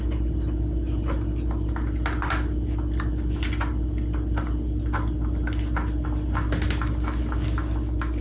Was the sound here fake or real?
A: real